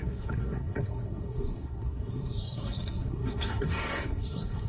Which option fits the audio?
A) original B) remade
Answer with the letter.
B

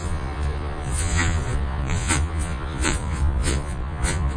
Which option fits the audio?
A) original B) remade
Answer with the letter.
B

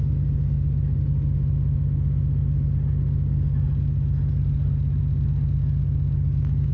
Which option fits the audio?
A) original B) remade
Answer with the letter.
A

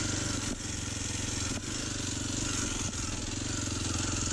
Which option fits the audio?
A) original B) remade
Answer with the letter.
A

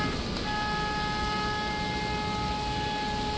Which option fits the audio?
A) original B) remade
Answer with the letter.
A